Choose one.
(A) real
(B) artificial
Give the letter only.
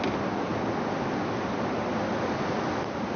A